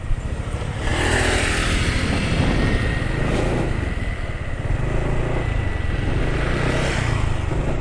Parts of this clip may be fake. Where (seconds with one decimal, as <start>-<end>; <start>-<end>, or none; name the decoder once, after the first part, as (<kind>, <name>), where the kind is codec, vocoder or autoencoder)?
none